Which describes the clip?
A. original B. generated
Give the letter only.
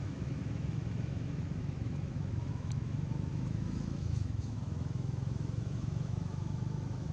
B